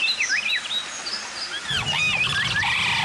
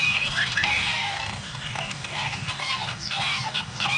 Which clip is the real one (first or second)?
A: first